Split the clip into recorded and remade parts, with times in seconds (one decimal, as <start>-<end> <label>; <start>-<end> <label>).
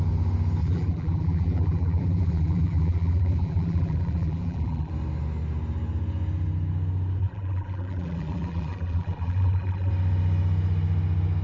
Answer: 0.0-0.6 recorded; 0.6-4.9 remade; 4.9-7.2 recorded; 7.2-9.9 remade; 9.9-11.4 recorded